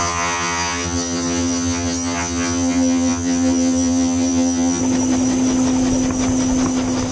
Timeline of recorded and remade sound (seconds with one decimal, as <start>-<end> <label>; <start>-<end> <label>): 0.0-4.8 remade; 4.8-7.1 recorded